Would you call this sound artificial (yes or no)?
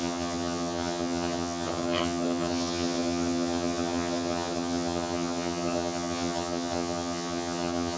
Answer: yes